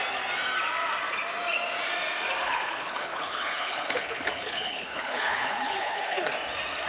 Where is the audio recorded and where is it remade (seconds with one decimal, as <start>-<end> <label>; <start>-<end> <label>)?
0.0-2.4 recorded; 2.4-6.3 remade; 6.3-6.9 recorded